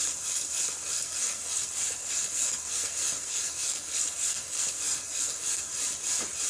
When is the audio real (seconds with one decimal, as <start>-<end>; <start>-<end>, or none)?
5.7-6.5